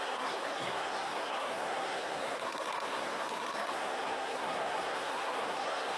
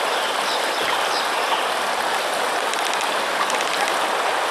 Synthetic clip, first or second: first